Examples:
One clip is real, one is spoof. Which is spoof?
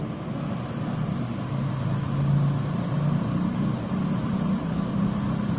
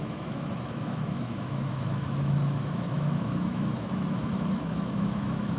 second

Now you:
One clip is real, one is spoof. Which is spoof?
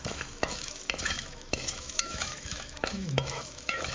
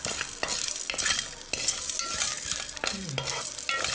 first